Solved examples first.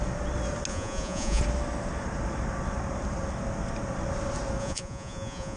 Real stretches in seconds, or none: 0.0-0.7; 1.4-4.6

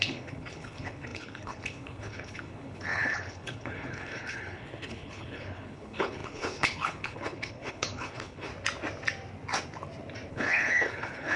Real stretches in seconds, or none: 8.5-10.3

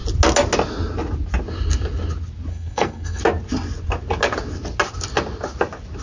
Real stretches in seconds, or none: 0.0-2.5; 3.2-6.0

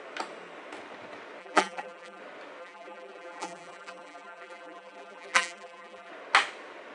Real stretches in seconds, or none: 0.0-1.4; 2.2-2.6; 6.1-6.9

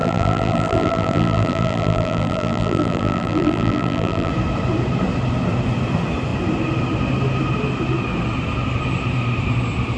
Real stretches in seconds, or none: 4.3-10.0

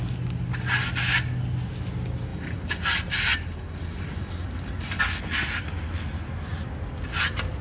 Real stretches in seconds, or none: 0.0-2.3; 5.0-7.6

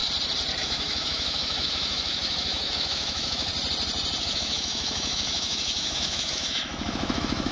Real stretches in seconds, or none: 0.0-0.6; 3.5-4.2

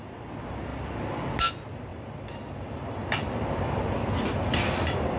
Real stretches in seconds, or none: 0.7-1.5